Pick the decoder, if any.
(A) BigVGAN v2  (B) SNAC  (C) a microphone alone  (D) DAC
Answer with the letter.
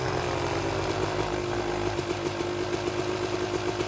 C